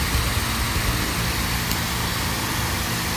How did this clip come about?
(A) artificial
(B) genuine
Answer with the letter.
B